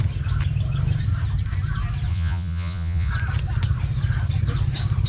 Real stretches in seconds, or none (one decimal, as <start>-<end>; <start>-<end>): 0.0-2.1; 3.1-5.1